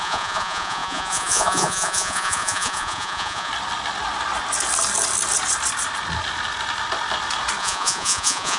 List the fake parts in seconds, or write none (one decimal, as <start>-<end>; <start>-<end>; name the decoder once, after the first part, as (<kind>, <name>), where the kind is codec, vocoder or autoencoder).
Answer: 0.0-3.5 (vocoder, Vocos); 7.6-8.6